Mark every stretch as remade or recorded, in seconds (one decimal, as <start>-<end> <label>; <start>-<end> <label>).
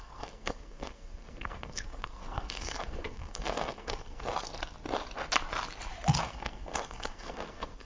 0.0-4.5 remade; 4.5-6.2 recorded; 6.2-7.8 remade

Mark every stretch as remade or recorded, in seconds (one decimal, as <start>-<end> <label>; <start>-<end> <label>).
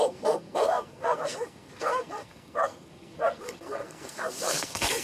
0.0-5.0 remade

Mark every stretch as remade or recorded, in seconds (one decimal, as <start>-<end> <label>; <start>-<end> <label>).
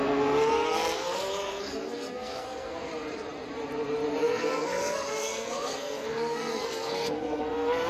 0.0-2.9 remade; 2.9-4.2 recorded; 4.2-7.9 remade